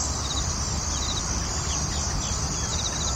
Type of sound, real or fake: real